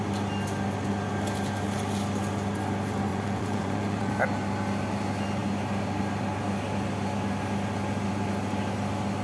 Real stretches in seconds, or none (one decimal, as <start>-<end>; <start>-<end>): 0.0-3.1; 4.1-9.2